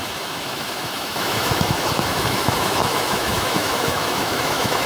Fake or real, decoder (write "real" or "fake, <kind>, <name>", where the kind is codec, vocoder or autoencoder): fake, autoencoder, DAC-VAE